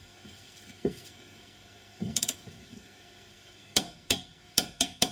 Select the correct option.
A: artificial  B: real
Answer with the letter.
A